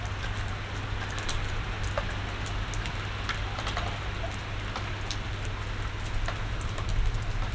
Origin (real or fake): real